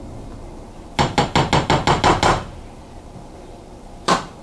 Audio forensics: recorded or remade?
recorded